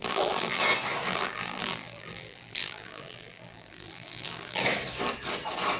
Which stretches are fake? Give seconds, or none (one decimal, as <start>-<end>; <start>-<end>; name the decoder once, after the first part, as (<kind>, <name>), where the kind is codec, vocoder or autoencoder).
0.0-0.6 (vocoder, BigVGAN v2); 1.1-4.6